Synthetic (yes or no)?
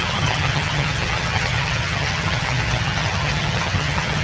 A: yes